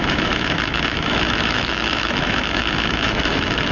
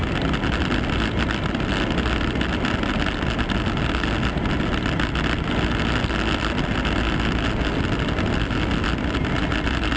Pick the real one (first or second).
second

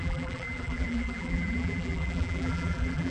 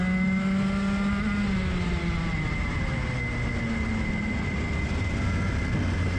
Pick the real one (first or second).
second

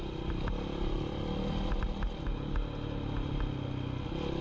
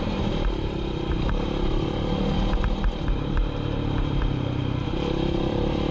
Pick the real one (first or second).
first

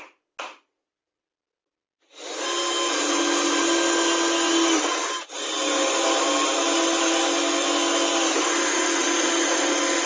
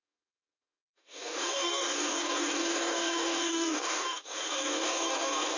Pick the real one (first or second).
first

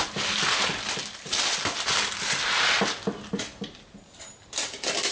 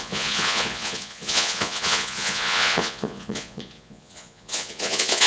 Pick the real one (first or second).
first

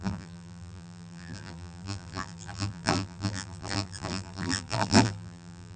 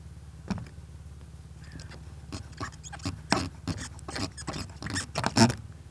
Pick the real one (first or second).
second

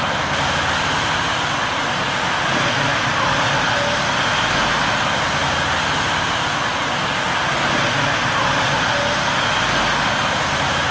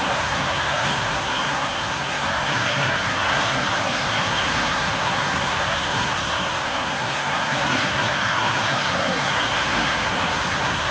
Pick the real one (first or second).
first